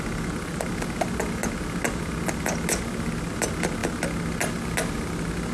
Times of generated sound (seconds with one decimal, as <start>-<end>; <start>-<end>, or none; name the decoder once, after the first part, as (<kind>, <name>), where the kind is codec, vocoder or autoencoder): none